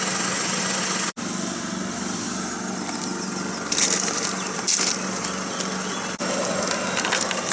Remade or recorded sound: recorded